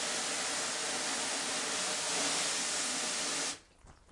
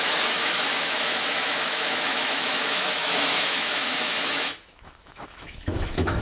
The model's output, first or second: second